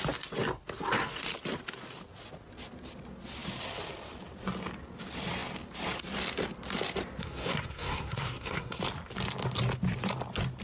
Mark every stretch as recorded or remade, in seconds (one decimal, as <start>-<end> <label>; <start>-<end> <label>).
0.0-7.2 recorded; 7.2-8.8 remade; 8.8-10.6 recorded